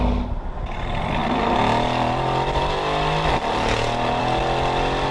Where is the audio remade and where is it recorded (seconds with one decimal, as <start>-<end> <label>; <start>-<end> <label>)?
0.0-5.1 recorded